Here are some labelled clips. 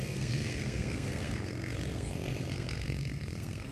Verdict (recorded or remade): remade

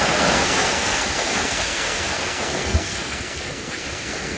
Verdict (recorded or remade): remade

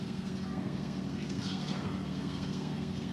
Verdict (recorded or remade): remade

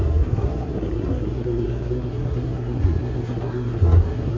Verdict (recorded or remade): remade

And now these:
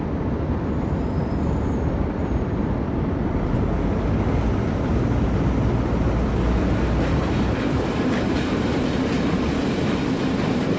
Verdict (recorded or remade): recorded